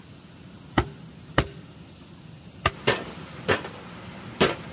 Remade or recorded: recorded